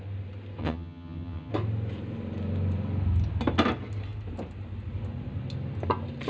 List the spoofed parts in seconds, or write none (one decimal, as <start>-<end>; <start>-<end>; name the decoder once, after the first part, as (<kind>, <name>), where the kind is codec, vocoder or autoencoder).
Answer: 0.6-1.5 (vocoder, HiFi-GAN)